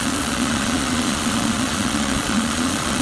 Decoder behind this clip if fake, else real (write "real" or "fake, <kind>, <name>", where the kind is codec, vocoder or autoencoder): fake, vocoder, Vocos